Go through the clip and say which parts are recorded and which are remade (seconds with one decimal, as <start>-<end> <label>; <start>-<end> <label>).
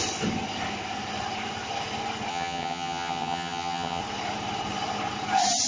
0.0-2.3 recorded; 2.3-4.0 remade; 4.0-5.7 recorded